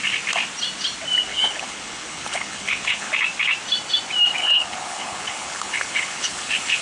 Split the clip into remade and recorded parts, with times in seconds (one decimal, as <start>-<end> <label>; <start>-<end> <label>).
0.0-1.3 recorded; 1.3-3.1 remade; 3.1-4.4 recorded; 4.4-6.8 remade